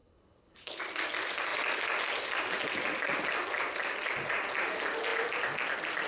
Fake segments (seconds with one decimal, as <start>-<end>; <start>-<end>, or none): 0.0-0.8